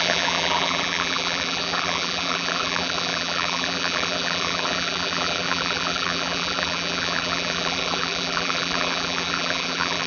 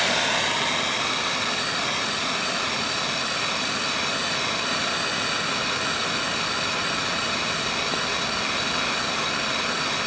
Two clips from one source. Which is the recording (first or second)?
second